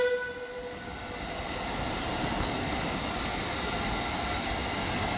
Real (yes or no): yes